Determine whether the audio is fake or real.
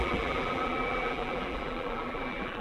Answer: fake